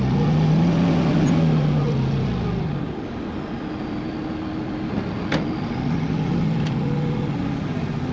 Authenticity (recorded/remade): recorded